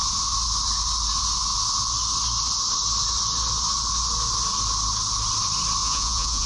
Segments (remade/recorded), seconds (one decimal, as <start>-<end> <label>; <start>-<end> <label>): 0.0-5.8 recorded; 5.8-6.5 remade